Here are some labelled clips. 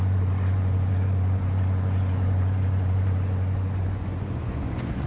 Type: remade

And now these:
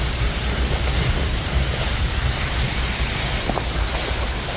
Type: recorded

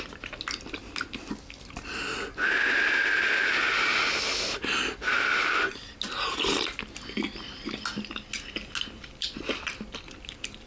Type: recorded